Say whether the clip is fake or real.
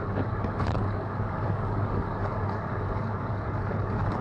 fake